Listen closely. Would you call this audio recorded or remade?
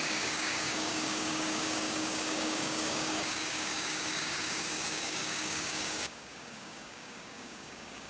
remade